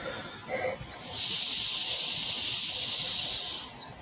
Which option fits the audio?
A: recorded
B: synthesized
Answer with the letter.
A